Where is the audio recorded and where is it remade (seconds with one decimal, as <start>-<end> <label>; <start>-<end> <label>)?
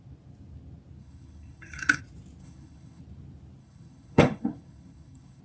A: 0.0-1.0 recorded; 1.0-2.0 remade; 2.0-2.4 recorded; 2.4-3.0 remade; 3.0-3.6 recorded; 3.6-5.4 remade